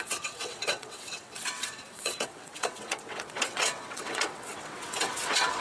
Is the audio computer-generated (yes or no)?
yes